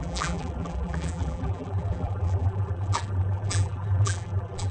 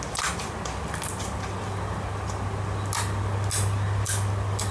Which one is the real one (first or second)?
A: second